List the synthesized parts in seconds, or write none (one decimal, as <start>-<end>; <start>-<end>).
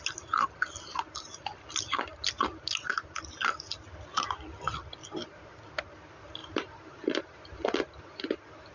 6.4-7.2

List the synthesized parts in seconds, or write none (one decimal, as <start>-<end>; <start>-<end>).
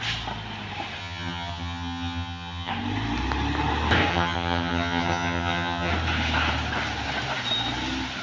1.0-2.7; 4.1-5.9